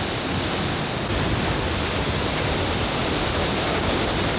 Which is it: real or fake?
real